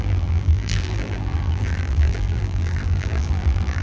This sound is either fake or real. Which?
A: fake